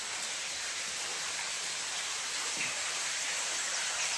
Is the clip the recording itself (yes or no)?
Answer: no